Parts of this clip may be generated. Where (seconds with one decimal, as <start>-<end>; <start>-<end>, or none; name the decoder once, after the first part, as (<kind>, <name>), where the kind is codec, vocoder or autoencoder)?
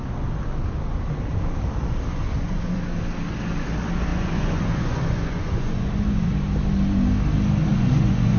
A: 2.1-2.8 (vocoder, Vocos); 4.1-6.3; 7.7-8.4